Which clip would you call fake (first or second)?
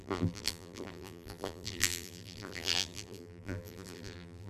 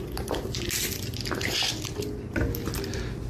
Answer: first